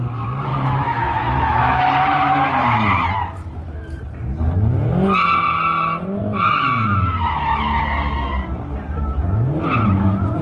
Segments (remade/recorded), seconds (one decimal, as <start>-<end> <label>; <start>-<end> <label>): 0.0-0.5 recorded; 0.5-1.8 remade; 1.8-6.2 recorded; 6.2-7.8 remade; 7.8-10.4 recorded